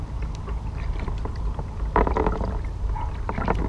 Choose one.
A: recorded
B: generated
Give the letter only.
A